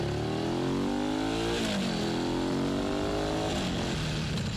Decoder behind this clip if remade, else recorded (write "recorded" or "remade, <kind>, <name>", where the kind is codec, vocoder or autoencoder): recorded